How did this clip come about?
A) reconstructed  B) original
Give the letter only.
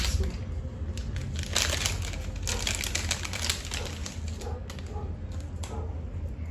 B